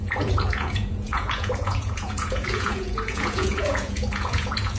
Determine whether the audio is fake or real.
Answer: fake